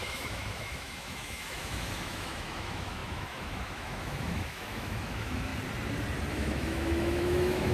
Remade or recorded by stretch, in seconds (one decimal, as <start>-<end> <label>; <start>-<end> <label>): 0.0-5.5 remade; 5.5-6.3 recorded; 6.3-7.7 remade